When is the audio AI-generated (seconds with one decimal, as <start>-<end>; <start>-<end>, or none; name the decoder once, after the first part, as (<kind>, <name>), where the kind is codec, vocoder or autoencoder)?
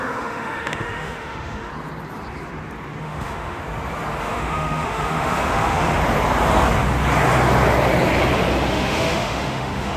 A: 0.0-1.7 (autoencoder, DAC-VAE); 3.0-3.6; 4.2-6.0; 8.7-10.0